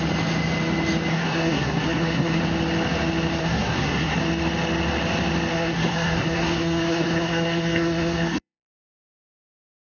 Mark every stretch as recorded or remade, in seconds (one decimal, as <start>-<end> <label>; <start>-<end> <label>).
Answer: 0.0-1.1 recorded; 1.1-2.4 remade; 2.4-3.4 recorded; 3.4-4.2 remade; 4.2-5.5 recorded; 5.5-8.9 remade; 8.9-9.9 recorded

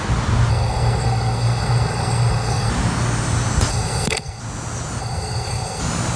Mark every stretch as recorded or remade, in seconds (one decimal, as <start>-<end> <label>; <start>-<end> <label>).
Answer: 0.0-0.5 recorded; 0.5-2.7 remade; 2.7-3.7 recorded; 3.7-4.4 remade; 4.4-5.0 recorded; 5.0-5.8 remade; 5.8-6.2 recorded

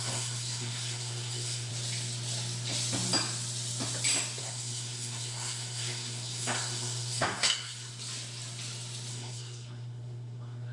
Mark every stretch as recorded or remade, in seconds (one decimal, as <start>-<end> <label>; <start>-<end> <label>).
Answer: 0.0-1.7 remade; 1.7-4.4 recorded; 4.4-7.9 remade; 7.9-9.1 recorded; 9.1-10.7 remade

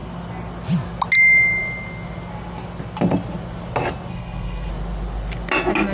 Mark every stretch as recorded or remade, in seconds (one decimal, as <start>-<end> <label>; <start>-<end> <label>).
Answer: 0.0-4.1 recorded; 4.1-4.7 remade; 4.7-5.9 recorded